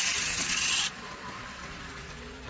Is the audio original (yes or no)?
no